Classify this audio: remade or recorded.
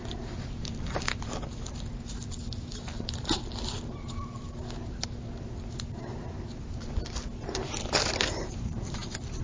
recorded